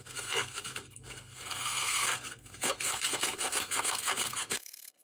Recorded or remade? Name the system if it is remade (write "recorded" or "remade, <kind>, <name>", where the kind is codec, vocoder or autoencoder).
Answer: remade, codec, SNAC